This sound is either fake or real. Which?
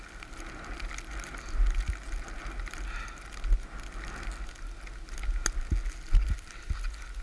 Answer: real